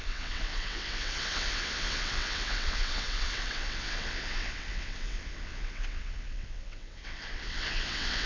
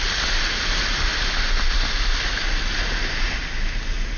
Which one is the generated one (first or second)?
first